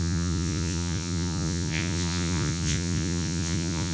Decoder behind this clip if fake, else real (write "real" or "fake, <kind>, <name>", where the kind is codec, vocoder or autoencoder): fake, vocoder, Vocos